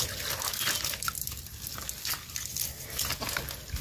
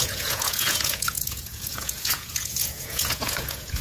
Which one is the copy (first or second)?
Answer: second